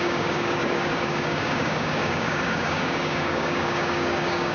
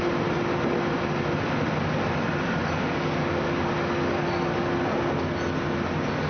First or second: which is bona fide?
second